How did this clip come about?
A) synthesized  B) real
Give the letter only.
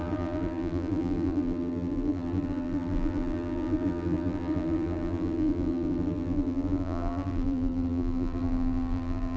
A